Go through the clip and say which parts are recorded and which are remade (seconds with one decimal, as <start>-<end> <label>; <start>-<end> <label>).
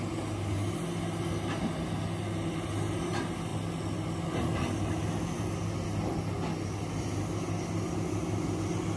0.0-9.0 recorded